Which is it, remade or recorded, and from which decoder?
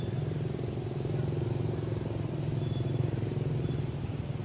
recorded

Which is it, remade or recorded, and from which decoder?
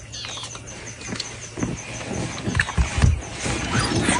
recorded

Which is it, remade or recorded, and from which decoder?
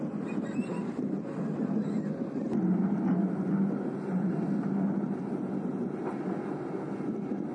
recorded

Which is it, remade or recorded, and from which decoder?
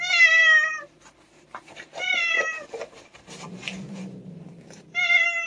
remade, vocoder, BigVGAN v2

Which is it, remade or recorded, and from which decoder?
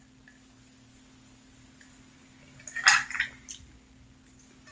recorded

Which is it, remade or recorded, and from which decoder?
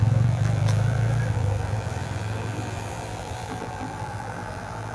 remade, vocoder, BigVGAN v2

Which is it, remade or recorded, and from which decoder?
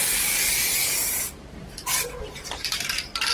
recorded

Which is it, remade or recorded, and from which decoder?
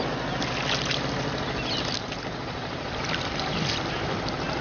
recorded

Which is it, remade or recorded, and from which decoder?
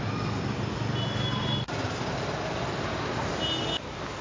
recorded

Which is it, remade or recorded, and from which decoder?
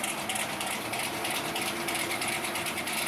remade, vocoder, BigVGAN v2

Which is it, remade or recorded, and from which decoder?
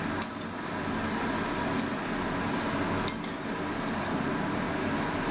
recorded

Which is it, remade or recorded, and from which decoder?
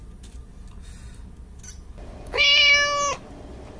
recorded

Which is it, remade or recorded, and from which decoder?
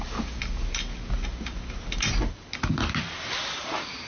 recorded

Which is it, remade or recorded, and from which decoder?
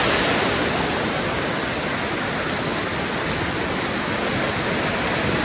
recorded